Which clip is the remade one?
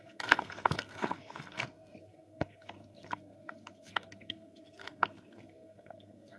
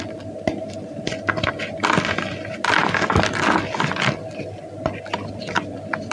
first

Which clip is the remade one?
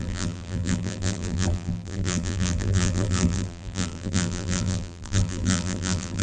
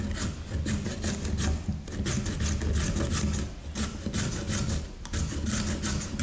first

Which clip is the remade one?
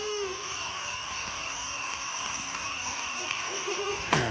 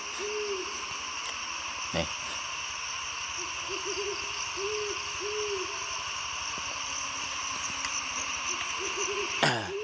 first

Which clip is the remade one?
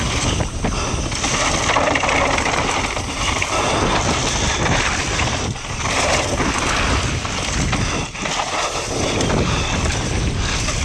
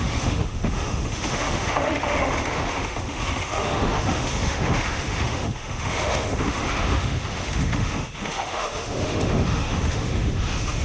second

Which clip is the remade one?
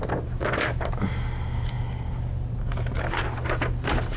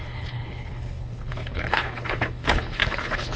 second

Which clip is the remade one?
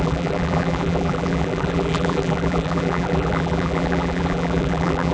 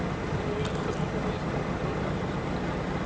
first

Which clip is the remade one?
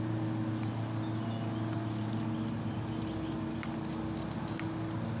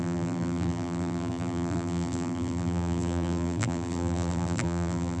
second